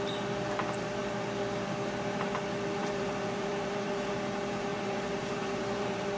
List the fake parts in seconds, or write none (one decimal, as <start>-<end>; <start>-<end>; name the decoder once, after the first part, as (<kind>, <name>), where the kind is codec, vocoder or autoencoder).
2.8-4.1 (vocoder, BigVGAN v2); 4.7-6.2